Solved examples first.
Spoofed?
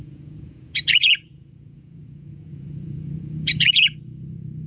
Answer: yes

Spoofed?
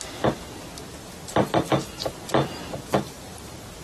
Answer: no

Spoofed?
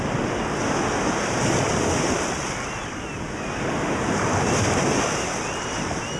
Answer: no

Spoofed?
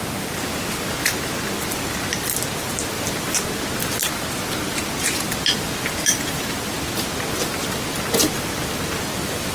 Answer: no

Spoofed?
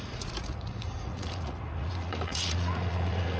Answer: yes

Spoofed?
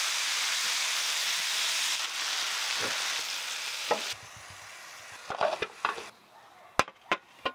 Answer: no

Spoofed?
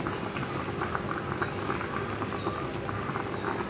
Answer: no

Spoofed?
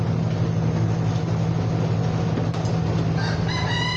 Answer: no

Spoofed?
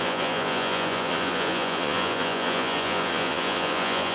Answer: yes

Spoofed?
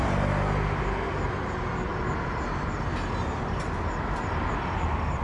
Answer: no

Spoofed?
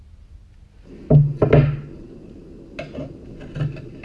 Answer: no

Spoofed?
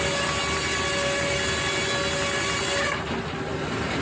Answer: no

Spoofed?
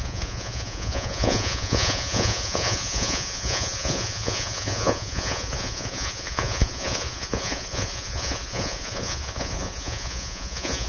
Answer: yes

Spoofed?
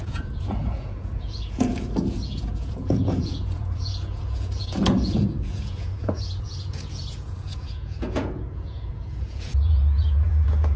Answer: yes